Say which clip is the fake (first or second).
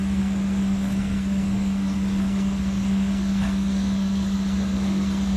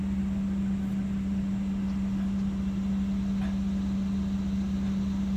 first